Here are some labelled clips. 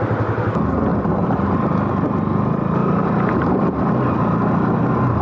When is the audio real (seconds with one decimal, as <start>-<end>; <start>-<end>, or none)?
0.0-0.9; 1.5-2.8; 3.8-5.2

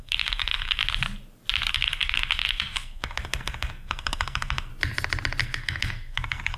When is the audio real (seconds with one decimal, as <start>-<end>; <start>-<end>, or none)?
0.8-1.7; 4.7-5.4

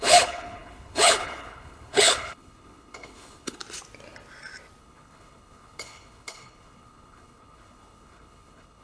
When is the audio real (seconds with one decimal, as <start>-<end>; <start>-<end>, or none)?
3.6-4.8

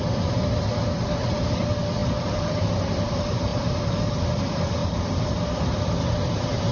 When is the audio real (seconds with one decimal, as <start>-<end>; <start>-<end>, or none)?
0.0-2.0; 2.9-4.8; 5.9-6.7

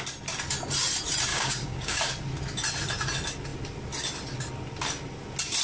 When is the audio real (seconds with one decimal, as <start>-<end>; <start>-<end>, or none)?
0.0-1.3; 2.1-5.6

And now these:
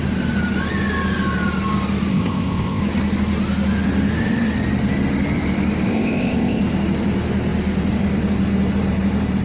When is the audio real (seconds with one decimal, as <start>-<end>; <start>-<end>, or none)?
0.0-2.1; 2.8-5.9; 6.6-9.4

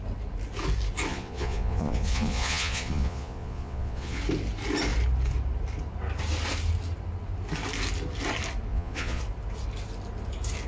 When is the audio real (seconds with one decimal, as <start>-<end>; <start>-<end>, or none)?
0.0-1.1; 4.2-8.7; 9.2-10.7